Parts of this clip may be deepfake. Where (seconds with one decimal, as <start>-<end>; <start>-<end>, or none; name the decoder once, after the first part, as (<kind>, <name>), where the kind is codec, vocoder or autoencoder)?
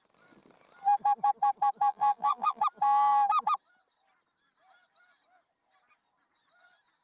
1.9-2.6 (vocoder, BigVGAN v2)